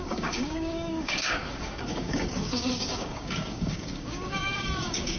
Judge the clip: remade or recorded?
remade